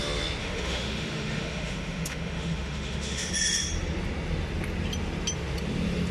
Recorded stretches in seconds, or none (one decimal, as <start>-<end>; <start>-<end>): 0.0-0.4; 3.3-6.1